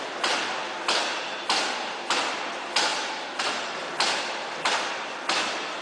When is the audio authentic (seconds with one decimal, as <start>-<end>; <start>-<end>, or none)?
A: 0.0-5.8